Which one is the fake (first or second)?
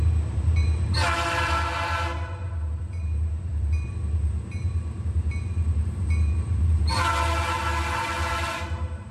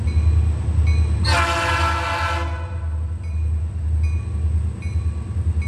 first